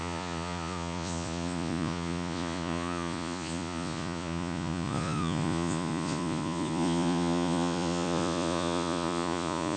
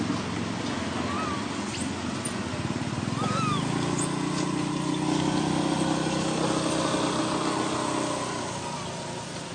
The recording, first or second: second